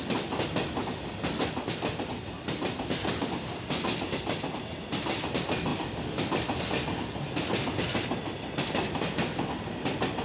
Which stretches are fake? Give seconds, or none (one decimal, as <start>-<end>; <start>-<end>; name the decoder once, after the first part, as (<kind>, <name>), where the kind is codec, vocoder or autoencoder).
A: 5.7-6.6 (vocoder, BigVGAN v2)